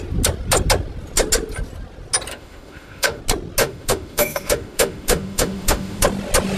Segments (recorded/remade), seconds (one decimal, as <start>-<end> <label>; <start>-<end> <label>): 0.0-2.3 recorded; 2.3-3.2 remade; 3.2-3.6 recorded; 3.6-6.0 remade; 6.0-6.6 recorded